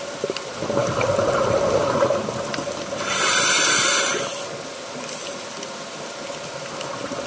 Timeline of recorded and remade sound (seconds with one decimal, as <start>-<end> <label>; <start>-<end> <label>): 0.0-7.3 recorded